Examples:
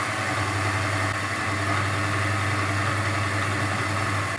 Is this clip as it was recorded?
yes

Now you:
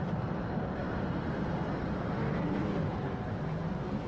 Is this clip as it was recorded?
yes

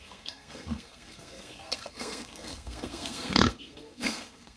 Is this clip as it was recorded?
no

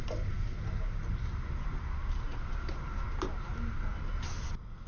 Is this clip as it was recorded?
yes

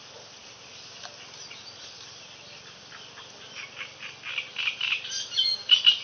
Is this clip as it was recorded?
yes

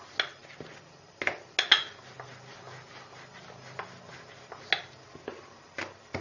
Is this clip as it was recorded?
yes